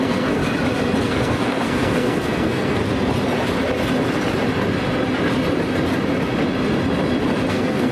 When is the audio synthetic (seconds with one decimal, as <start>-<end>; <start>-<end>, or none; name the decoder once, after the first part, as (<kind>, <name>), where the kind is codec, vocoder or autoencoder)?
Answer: 0.0-0.4 (codec, SNAC); 1.0-2.8; 7.5-7.9